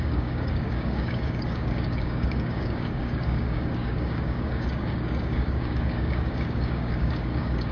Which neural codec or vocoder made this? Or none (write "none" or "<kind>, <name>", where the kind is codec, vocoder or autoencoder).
codec, DAC